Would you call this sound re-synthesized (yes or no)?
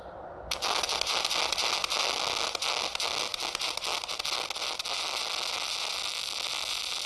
no